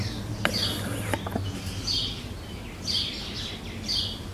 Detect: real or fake real